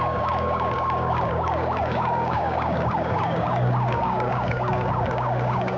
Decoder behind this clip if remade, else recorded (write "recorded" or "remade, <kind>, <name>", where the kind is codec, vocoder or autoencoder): remade, codec, DAC